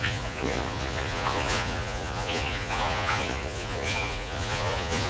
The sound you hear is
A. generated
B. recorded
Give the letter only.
A